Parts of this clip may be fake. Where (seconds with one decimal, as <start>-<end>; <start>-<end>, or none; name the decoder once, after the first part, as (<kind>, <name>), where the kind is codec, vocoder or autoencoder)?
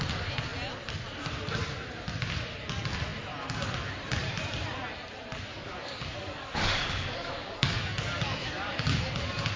5.5-9.0 (codec, DAC)